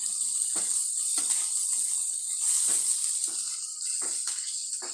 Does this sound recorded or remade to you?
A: recorded